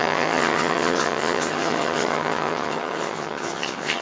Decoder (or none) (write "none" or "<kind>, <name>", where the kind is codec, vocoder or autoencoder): vocoder, HiFi-GAN